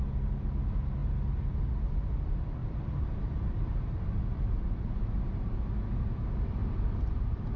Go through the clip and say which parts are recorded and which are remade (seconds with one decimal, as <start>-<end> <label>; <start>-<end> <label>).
0.0-2.6 recorded; 2.6-5.7 remade; 5.7-6.6 recorded; 6.6-7.6 remade